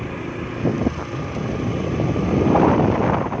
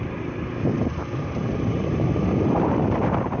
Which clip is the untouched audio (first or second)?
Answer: first